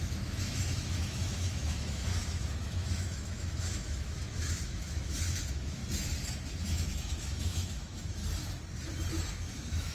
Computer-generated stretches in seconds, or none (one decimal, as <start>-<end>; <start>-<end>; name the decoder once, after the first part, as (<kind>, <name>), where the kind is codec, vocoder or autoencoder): 0.0-5.8 (autoencoder, DAC-VAE); 6.7-8.2; 9.3-9.9